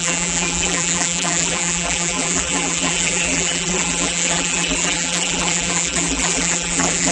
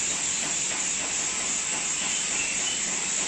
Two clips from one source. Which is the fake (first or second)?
first